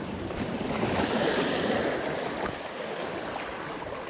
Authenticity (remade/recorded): recorded